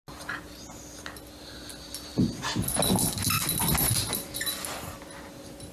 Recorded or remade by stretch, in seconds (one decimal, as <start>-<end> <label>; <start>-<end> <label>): 0.0-5.7 recorded